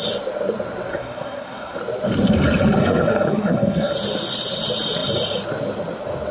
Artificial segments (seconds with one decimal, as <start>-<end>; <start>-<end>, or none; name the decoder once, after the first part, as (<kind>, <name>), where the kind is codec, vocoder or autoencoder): 0.9-1.8 (codec, SNAC); 2.8-3.9